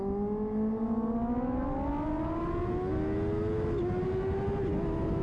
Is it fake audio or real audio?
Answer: real